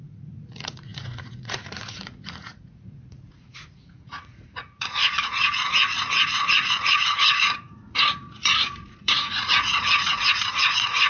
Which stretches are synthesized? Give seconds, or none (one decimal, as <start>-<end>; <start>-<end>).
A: 0.0-11.1